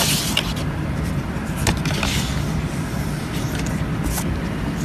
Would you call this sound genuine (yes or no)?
no